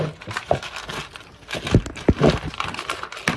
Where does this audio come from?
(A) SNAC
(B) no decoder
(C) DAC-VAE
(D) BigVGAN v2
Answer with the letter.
B